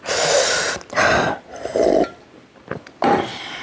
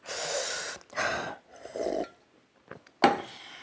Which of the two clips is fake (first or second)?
first